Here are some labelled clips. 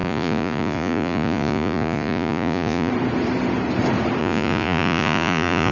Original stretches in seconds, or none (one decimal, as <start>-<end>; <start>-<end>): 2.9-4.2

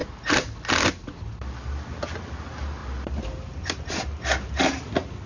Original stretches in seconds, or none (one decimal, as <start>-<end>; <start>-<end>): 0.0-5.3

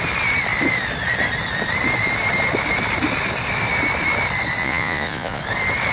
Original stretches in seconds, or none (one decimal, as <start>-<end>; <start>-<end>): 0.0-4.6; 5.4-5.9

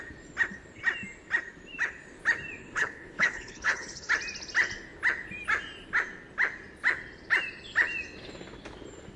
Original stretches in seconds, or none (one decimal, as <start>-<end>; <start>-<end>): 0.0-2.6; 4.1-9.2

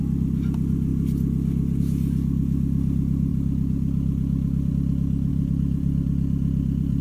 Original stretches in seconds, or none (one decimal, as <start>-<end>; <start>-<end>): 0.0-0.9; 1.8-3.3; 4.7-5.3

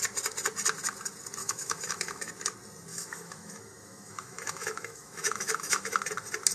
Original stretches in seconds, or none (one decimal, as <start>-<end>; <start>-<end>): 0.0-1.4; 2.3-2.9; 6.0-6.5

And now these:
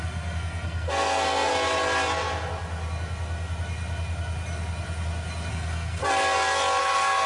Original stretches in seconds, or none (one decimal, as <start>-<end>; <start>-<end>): 1.5-5.5; 6.0-6.8